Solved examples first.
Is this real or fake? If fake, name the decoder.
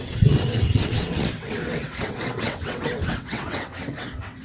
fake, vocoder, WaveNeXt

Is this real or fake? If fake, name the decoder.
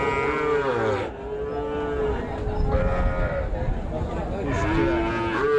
real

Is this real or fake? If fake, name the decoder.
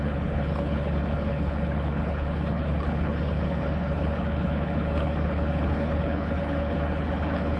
fake, codec, HILCodec